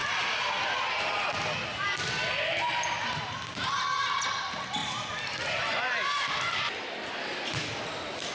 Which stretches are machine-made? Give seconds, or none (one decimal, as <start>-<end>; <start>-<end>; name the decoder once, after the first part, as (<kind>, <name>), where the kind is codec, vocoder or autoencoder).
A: 0.0-0.5 (vocoder, BigVGAN v2); 4.8-8.3